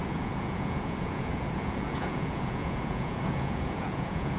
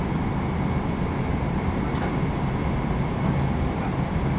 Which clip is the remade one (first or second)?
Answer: first